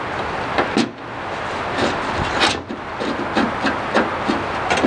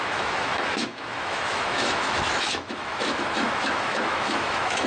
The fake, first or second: second